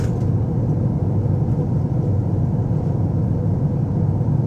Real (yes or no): yes